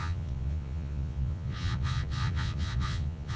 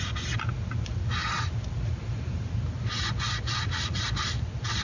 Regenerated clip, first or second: first